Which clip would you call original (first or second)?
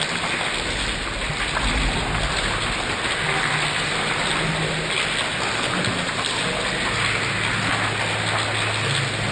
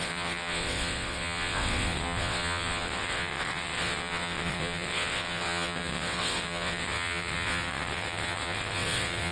first